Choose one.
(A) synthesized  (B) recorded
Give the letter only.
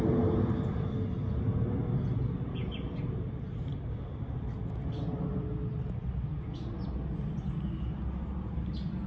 B